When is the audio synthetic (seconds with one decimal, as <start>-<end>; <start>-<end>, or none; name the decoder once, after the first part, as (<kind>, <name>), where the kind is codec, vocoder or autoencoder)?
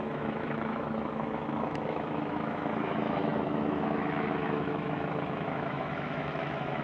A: 0.0-6.8 (autoencoder, DAC-VAE)